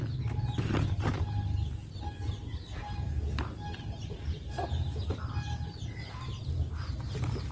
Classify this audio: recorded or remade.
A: recorded